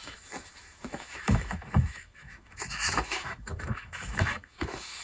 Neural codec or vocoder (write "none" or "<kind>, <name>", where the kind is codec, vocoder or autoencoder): autoencoder, DAC-VAE